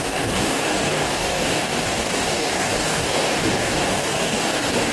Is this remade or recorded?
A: remade